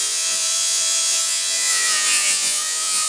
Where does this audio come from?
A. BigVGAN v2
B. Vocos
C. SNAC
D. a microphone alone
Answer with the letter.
B